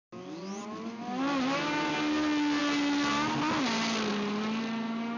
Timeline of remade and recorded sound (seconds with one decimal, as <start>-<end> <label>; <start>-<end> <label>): 0.0-5.2 recorded